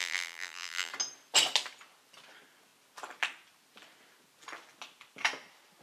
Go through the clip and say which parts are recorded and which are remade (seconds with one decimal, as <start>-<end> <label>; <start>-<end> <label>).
0.0-0.9 remade; 0.9-5.8 recorded